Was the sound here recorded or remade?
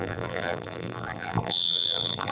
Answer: remade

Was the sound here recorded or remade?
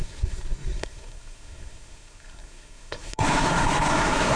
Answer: remade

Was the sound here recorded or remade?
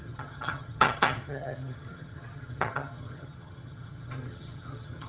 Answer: remade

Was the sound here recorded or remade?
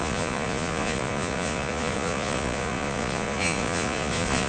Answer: remade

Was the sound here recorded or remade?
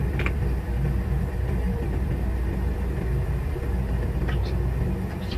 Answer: remade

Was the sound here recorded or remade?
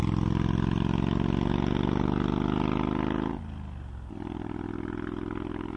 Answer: recorded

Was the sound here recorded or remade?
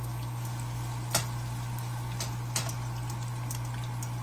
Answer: recorded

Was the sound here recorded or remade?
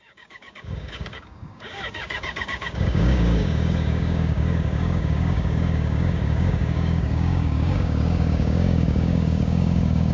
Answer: remade